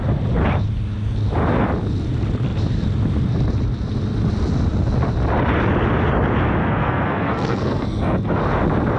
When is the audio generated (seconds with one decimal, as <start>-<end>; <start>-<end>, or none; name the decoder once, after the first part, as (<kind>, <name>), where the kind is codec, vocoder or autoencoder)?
6.6-8.4 (codec, SNAC)